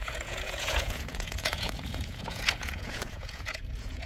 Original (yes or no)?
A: no